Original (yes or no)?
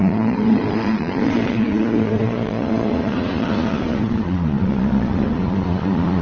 no